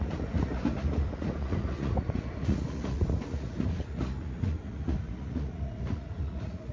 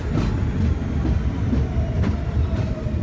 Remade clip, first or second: first